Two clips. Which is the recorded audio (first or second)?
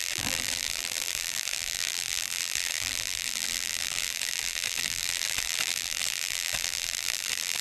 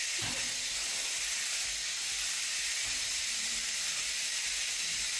second